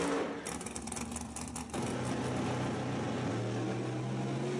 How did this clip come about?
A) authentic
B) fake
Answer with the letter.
A